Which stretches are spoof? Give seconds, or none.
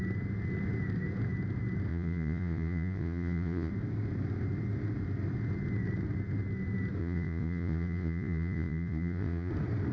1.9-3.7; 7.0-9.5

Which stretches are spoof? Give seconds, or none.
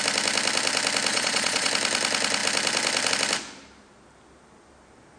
1.1-1.7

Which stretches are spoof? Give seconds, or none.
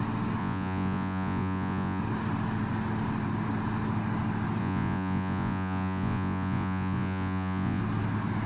0.4-2.0; 4.6-7.8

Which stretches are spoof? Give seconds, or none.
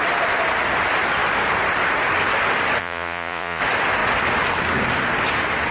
2.8-3.6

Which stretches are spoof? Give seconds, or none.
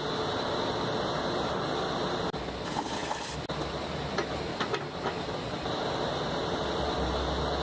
none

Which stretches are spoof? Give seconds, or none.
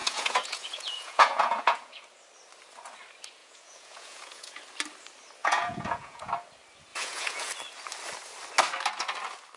0.0-2.0; 3.4-4.6; 5.4-6.3; 6.9-7.5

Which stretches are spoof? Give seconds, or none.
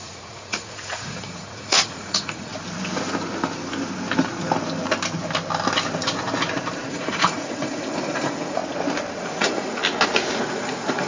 0.0-2.5; 6.9-8.6; 9.2-9.8; 10.4-11.1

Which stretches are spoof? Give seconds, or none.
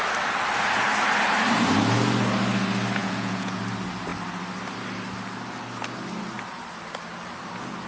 3.0-3.6